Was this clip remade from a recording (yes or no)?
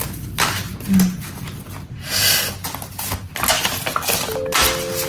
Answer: no